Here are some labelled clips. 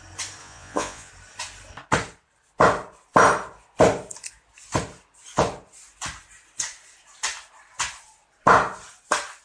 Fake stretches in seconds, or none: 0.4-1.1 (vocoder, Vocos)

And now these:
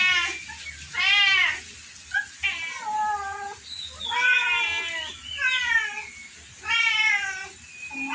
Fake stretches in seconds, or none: 6.2-7.1 (vocoder, BigVGAN v2)

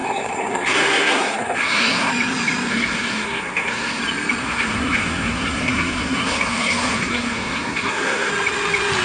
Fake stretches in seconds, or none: 0.0-2.1 (codec, SNAC); 2.7-4.0; 4.4-8.3

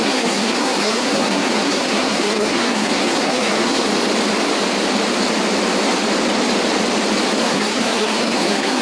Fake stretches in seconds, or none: 0.0-3.9 (codec, SNAC); 7.4-8.8

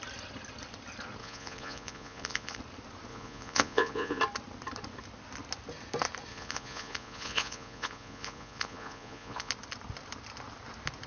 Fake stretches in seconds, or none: 1.2-2.6 (vocoder, Vocos); 3.1-4.2; 6.3-9.5

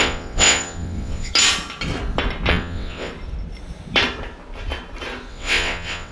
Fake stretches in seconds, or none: 0.0-1.3 (vocoder, WaveNeXt); 2.5-3.1; 5.3-6.1